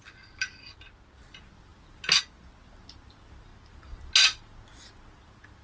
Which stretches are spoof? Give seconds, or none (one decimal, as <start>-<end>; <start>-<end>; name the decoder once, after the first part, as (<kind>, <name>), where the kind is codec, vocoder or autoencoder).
none